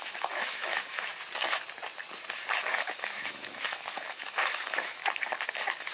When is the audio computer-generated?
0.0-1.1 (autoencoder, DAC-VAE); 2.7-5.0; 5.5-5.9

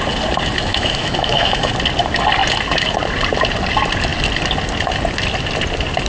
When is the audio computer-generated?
0.7-1.7 (autoencoder, DAC-VAE)

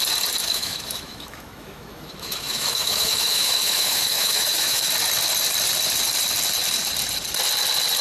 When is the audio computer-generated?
0.4-4.9 (autoencoder, DAC-VAE)